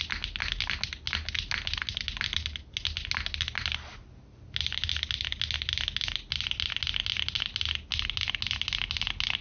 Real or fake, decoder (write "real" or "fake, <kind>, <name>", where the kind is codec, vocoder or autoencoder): real